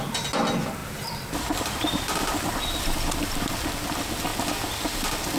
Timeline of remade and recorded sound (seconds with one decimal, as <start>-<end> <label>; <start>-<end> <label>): 0.0-0.8 recorded; 0.8-3.4 remade; 3.4-5.4 recorded